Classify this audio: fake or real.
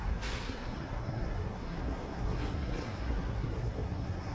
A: fake